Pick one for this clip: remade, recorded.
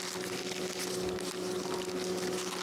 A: recorded